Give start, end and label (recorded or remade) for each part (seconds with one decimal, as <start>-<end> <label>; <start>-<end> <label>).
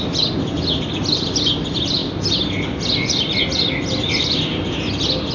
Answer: 0.0-5.3 recorded